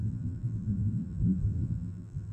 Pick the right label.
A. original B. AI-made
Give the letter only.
B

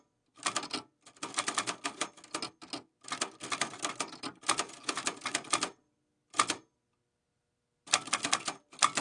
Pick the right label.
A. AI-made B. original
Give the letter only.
B